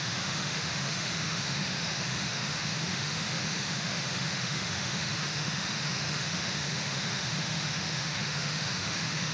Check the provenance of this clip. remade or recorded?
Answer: remade